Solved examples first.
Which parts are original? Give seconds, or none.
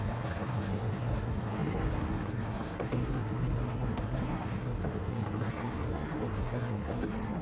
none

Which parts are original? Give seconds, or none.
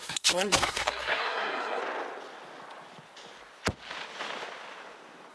1.8-5.3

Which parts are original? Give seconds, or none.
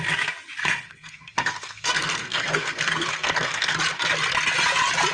0.0-0.6; 3.7-5.1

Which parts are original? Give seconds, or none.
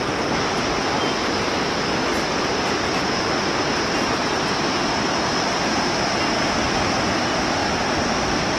0.0-8.6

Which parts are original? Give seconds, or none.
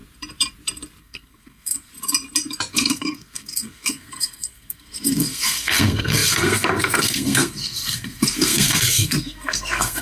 0.0-1.0; 1.9-2.7